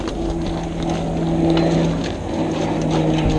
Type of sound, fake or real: real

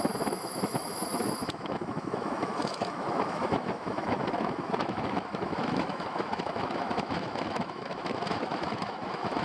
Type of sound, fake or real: fake